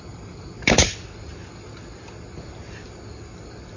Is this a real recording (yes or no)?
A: yes